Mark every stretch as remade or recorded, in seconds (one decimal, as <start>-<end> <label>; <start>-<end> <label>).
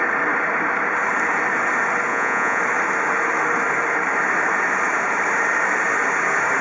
0.0-2.1 recorded; 2.1-2.6 remade; 2.6-6.6 recorded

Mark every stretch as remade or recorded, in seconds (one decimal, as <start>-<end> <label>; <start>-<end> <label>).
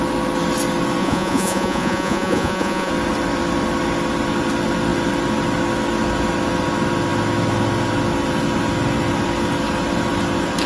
0.0-1.0 recorded; 1.0-2.9 remade; 2.9-10.7 recorded